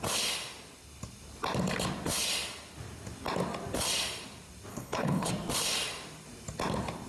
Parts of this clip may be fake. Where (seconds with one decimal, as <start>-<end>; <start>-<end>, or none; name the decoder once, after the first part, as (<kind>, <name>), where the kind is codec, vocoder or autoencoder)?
4.7-5.3 (codec, HILCodec)

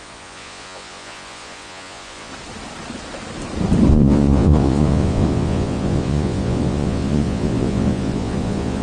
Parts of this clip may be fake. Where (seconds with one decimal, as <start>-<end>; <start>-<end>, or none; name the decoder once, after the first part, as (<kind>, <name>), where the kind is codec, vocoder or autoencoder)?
0.0-2.3 (vocoder, Vocos); 3.9-8.8